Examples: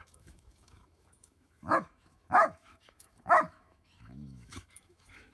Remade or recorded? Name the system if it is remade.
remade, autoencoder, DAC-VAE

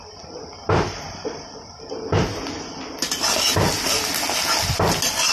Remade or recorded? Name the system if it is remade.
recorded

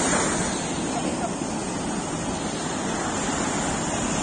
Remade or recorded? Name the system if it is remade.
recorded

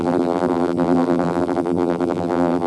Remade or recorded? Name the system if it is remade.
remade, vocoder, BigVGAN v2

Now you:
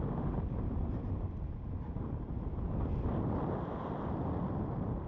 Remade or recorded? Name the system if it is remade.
recorded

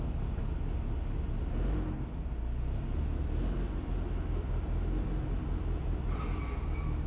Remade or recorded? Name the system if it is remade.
recorded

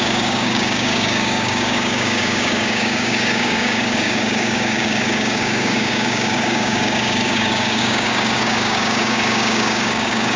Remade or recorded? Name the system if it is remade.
remade, codec, DAC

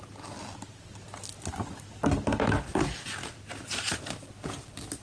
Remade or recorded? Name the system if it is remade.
recorded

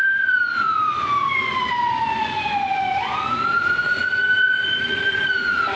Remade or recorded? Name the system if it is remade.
remade, vocoder, Vocos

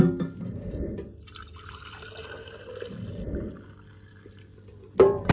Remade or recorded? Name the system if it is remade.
recorded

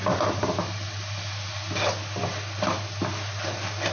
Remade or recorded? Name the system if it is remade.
recorded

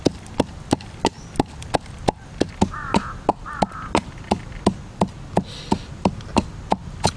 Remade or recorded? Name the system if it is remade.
recorded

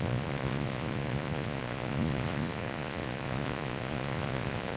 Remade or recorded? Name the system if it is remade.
remade, vocoder, Vocos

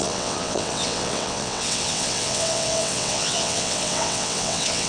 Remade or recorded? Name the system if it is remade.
remade, vocoder, WaveNeXt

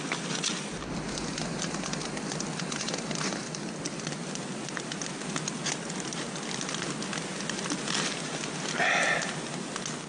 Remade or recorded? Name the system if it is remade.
recorded